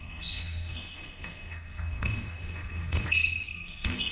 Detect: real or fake fake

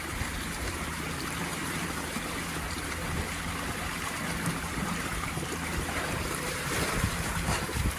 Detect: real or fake fake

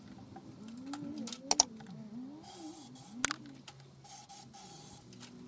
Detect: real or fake real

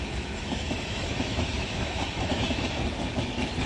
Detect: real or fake fake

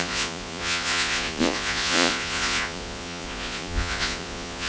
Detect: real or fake fake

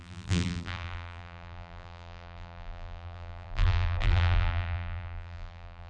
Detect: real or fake fake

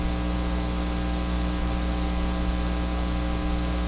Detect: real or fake real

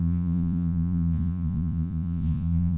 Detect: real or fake fake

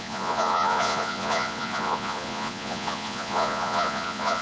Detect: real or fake fake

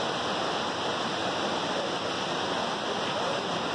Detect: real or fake real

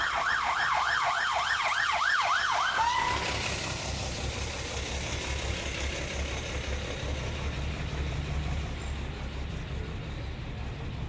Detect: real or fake real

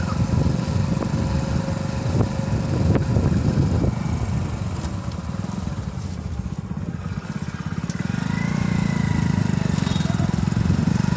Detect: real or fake real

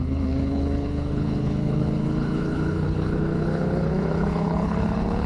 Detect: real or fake fake